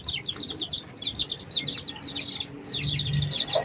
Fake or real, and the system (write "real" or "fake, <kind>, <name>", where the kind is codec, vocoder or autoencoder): real